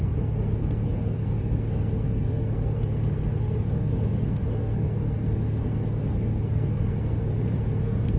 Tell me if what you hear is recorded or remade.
remade